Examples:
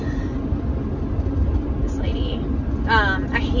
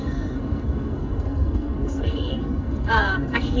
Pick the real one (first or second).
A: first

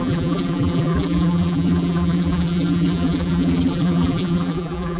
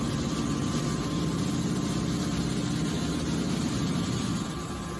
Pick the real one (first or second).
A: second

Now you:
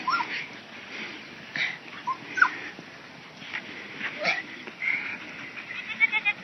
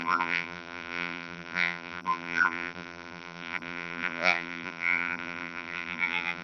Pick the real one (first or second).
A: first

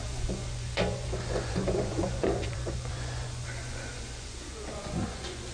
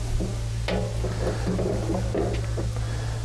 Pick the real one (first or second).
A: second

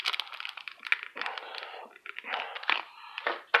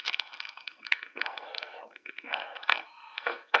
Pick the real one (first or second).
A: first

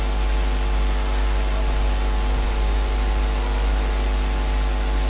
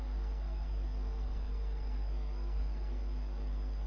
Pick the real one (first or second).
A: first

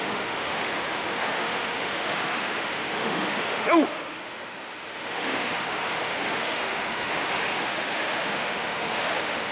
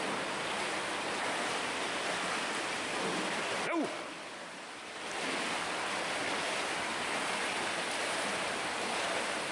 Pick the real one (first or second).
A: second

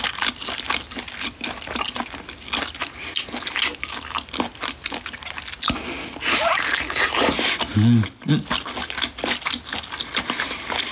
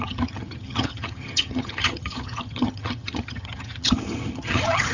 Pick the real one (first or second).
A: first